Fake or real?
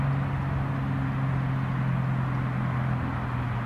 real